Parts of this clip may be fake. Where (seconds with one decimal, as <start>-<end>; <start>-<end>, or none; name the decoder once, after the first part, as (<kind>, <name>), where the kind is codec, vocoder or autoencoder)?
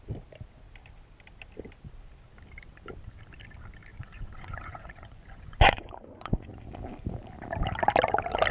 3.9-6.5 (vocoder, Vocos)